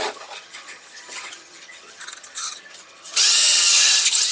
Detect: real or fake fake